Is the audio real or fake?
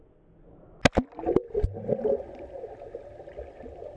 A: real